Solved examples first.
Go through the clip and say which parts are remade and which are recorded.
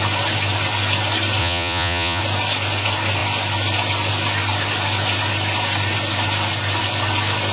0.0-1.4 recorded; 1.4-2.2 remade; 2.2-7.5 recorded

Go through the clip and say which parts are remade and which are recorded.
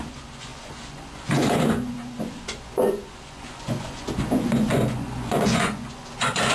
0.0-6.5 remade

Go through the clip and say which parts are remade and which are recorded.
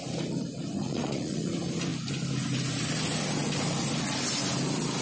0.0-0.8 recorded; 0.8-1.5 remade; 1.5-5.0 recorded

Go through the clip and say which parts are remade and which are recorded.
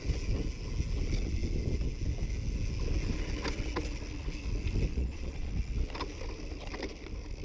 0.0-4.9 recorded; 4.9-5.5 remade; 5.5-7.4 recorded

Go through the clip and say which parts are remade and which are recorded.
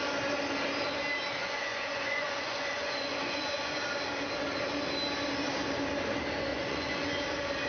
0.0-1.4 recorded; 1.4-3.8 remade; 3.8-6.5 recorded; 6.5-7.2 remade; 7.2-7.7 recorded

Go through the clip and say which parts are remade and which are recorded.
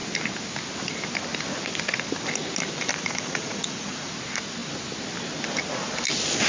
0.0-2.9 recorded; 2.9-4.1 remade; 4.1-6.5 recorded